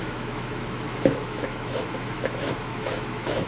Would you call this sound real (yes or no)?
no